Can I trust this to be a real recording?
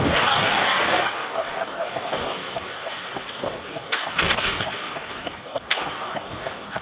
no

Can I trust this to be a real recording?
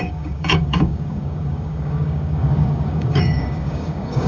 no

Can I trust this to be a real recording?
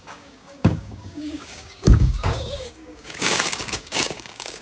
no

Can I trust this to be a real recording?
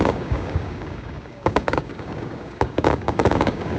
no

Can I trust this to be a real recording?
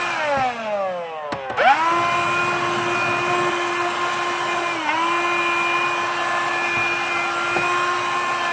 yes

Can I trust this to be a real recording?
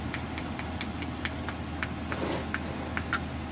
yes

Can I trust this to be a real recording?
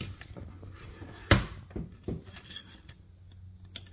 yes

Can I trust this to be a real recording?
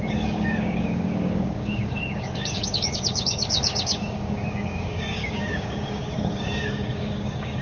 no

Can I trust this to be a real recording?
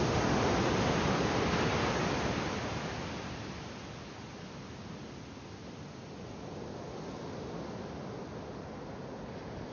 yes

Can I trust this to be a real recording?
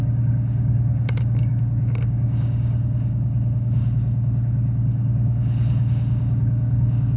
no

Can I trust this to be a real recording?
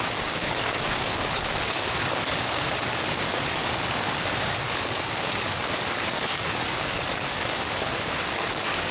no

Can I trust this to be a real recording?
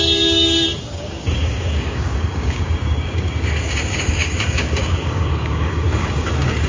no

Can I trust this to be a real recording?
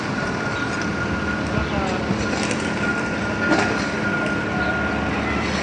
yes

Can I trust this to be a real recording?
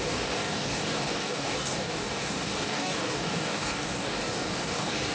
no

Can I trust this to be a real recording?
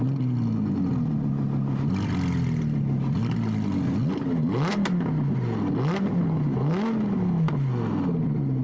yes